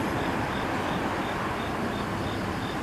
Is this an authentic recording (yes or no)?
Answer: yes